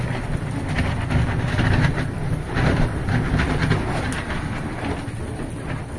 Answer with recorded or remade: recorded